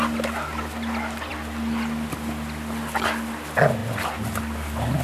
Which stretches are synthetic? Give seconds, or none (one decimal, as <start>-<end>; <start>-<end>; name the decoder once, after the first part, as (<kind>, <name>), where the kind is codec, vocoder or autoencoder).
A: none